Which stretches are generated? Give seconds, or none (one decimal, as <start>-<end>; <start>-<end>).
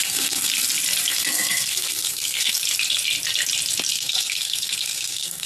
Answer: 0.0-0.5; 1.1-2.6; 3.9-5.5